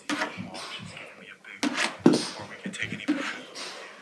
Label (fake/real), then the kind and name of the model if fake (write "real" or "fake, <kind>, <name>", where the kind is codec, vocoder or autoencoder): real